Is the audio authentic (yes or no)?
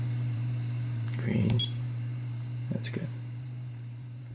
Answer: no